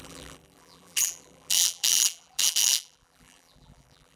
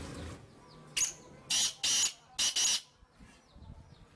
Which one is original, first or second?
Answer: second